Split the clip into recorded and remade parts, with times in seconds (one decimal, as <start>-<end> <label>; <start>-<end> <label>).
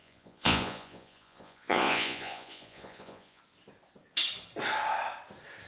0.0-3.4 remade; 3.4-5.7 recorded